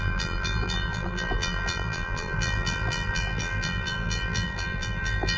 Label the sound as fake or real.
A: fake